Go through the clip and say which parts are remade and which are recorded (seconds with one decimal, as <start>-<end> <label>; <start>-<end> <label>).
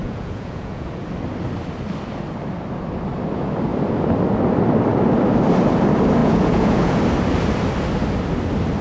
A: 0.0-1.1 remade; 1.1-6.2 recorded; 6.2-7.0 remade; 7.0-8.8 recorded